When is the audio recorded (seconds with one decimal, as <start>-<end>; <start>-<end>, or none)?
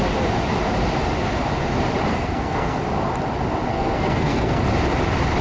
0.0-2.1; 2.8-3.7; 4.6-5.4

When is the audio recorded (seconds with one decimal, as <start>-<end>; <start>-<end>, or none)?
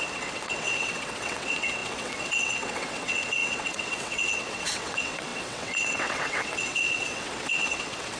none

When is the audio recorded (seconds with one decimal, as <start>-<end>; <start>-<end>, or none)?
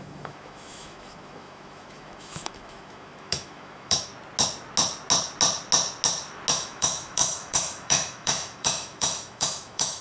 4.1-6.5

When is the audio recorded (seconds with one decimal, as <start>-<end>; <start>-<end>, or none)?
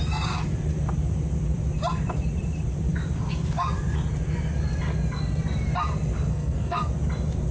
0.0-6.3; 6.9-7.5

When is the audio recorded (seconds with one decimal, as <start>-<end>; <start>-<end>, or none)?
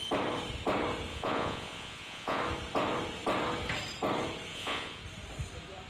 0.0-1.1; 2.4-4.5; 5.0-5.9